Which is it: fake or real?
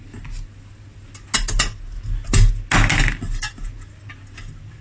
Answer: real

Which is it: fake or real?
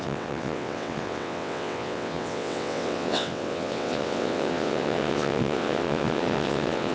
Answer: fake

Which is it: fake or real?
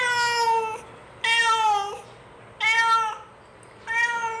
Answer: real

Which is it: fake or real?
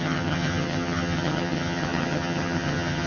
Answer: fake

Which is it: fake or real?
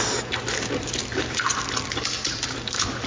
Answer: real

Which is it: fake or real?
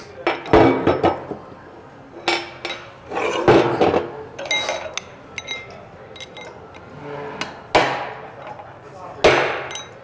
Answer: real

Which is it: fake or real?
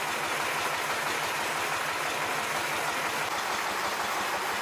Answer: real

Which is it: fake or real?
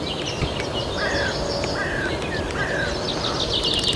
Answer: real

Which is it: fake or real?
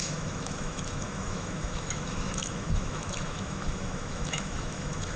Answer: fake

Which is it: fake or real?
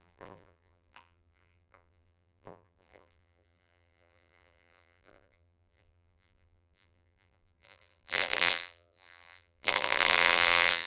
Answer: fake